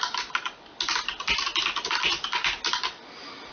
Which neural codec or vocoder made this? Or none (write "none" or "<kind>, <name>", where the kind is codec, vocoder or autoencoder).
none